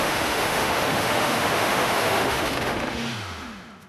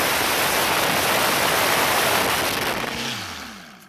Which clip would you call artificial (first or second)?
first